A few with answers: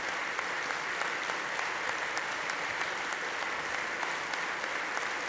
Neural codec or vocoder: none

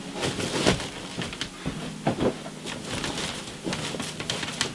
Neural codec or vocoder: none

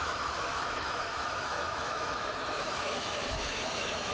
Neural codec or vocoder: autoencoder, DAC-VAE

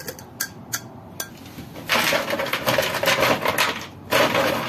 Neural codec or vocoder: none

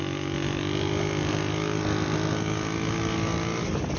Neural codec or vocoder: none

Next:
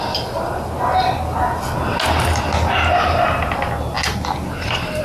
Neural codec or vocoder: none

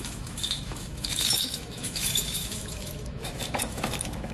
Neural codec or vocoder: autoencoder, DAC-VAE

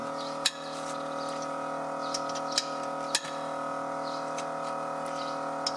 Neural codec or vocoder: none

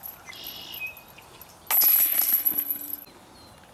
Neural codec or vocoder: none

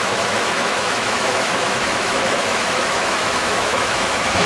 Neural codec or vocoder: autoencoder, DAC-VAE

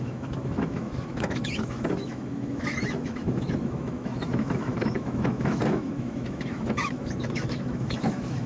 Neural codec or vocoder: autoencoder, DAC-VAE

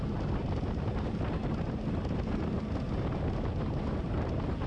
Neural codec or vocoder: none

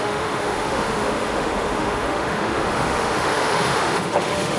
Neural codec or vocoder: autoencoder, DAC-VAE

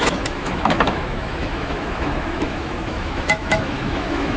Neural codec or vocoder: autoencoder, DAC-VAE